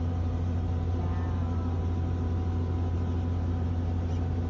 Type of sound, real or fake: real